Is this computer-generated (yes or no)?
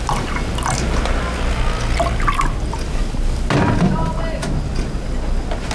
no